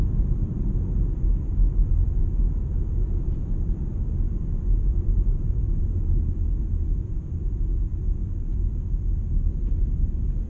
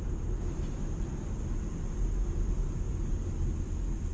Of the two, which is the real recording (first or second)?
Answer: second